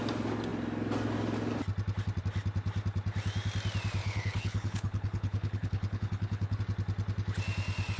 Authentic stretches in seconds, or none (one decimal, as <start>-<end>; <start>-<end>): 0.0-4.0; 6.6-8.0